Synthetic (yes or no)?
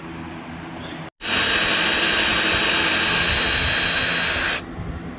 no